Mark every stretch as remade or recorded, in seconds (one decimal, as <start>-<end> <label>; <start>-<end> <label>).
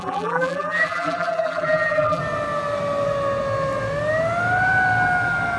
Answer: 0.0-2.2 remade; 2.2-5.6 recorded